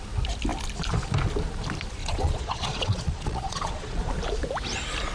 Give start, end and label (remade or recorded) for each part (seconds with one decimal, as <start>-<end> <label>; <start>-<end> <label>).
0.0-2.0 recorded; 2.0-4.1 remade; 4.1-5.1 recorded